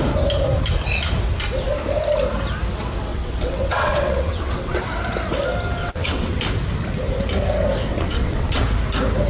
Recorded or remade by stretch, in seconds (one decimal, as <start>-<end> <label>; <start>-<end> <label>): 0.0-3.1 recorded; 3.1-4.8 remade; 4.8-5.8 recorded; 5.8-6.4 remade; 6.4-7.9 recorded; 7.9-8.6 remade; 8.6-9.3 recorded